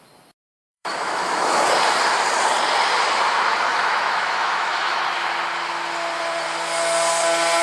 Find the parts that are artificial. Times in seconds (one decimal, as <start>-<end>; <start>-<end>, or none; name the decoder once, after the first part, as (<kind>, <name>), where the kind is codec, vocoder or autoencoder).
0.5-1.6 (autoencoder, DAC-VAE); 3.7-5.0